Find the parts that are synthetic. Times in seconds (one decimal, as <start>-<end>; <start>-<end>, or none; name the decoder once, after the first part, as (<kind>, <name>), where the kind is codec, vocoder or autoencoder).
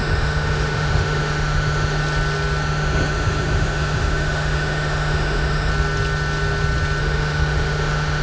0.0-2.0 (autoencoder, DAC-VAE); 2.6-5.7; 7.0-8.2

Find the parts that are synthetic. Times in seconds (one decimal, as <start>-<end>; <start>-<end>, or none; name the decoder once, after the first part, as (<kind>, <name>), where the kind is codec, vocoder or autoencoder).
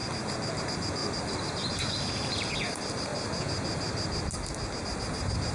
0.6-3.1 (vocoder, BigVGAN v2); 4.8-5.5